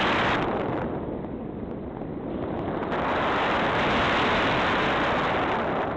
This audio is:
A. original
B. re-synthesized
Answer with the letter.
A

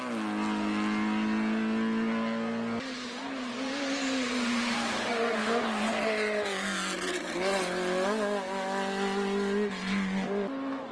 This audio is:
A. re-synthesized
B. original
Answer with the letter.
B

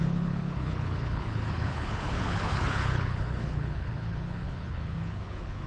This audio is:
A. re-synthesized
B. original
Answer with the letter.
A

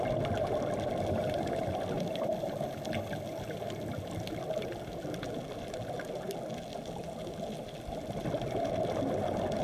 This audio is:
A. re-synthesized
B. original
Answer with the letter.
B